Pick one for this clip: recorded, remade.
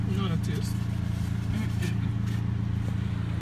recorded